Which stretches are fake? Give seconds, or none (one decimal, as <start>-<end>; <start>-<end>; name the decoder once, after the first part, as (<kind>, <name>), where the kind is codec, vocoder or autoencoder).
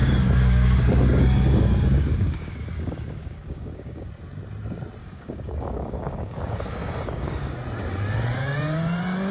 0.0-4.1 (codec, DAC); 5.0-7.5